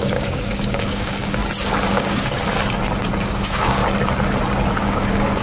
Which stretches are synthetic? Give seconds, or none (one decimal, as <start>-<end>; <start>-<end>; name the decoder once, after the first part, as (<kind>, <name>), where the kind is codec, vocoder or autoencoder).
0.0-1.4 (codec, DAC); 1.9-2.4; 3.2-3.8; 4.8-5.4

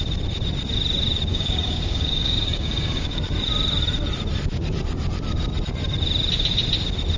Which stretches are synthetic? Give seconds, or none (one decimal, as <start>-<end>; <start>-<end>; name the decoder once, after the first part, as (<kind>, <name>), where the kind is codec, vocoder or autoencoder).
1.3-3.2 (codec, DAC)